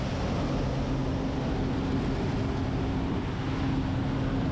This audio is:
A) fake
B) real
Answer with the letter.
B